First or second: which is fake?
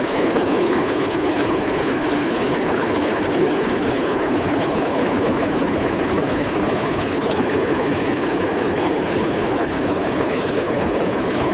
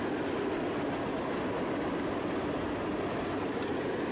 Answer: first